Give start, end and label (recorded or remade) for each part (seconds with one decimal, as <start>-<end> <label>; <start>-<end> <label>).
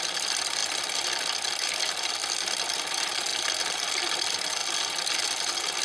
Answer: 0.0-2.2 remade; 2.2-2.9 recorded; 2.9-4.6 remade; 4.6-5.8 recorded